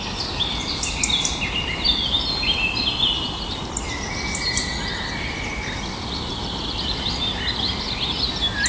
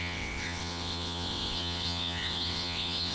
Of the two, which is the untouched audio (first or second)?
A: first